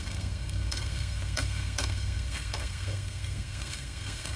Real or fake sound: fake